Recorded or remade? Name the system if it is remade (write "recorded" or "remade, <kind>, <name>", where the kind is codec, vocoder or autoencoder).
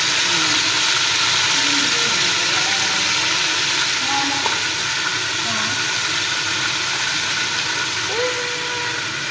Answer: recorded